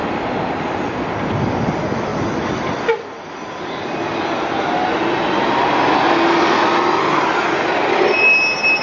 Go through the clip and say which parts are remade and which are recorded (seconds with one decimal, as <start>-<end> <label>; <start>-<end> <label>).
0.0-8.8 recorded